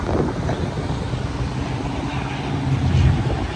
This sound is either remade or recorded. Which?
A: recorded